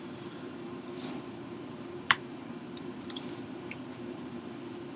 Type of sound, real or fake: fake